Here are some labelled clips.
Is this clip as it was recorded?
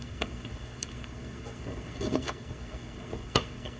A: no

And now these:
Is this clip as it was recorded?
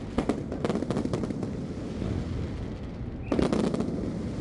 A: yes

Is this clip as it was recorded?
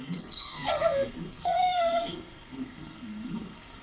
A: no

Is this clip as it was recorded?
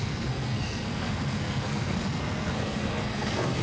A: no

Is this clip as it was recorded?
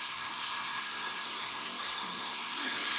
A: no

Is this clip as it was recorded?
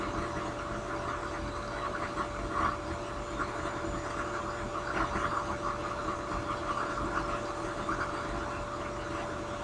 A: yes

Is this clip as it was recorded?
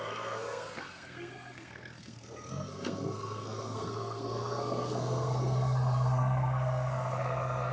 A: no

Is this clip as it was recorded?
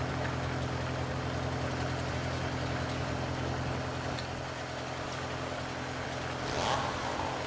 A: yes